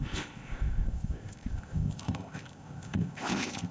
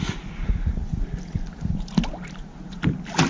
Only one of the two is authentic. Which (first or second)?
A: second